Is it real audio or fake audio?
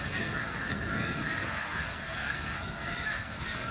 fake